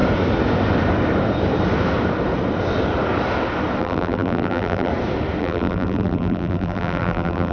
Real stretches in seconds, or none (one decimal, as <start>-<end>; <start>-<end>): 0.0-3.8; 4.9-5.4